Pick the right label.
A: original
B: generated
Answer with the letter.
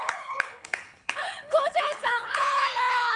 B